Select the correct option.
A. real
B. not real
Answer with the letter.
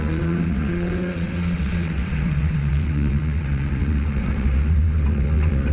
B